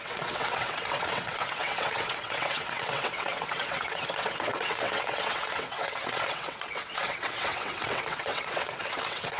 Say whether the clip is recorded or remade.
remade